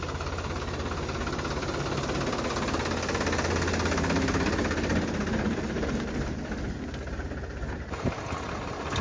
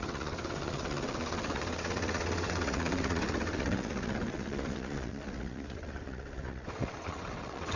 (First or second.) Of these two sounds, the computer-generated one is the second